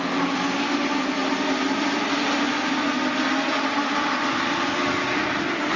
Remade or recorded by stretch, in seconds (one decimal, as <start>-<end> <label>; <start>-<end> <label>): 0.0-5.8 recorded